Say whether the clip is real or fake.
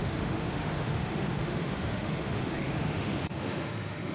fake